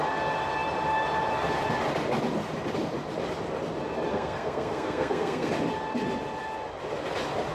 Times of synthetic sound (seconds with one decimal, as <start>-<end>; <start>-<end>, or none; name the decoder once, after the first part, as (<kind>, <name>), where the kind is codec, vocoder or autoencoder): 4.1-5.5 (codec, SNAC)